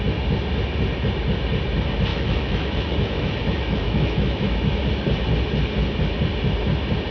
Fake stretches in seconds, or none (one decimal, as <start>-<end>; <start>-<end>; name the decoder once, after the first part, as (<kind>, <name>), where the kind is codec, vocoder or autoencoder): 2.1-4.8 (autoencoder, DAC-VAE)

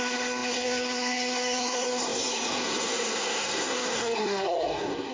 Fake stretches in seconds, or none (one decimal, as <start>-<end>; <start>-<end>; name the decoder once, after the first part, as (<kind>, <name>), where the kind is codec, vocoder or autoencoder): 0.0-5.1 (codec, SNAC)

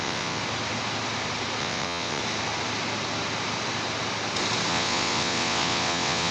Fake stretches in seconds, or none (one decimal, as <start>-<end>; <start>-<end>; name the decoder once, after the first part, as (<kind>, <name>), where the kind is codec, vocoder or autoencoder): 0.0-0.4 (vocoder, WaveNeXt); 1.6-2.2; 4.7-6.3

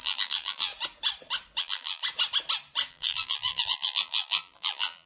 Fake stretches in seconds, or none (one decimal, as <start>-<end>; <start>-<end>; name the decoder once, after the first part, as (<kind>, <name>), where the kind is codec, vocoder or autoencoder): 0.0-0.7 (vocoder, BigVGAN v2); 1.6-2.0; 2.9-5.1